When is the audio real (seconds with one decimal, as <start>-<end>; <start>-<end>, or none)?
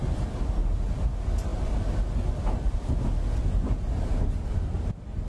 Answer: 0.0-5.3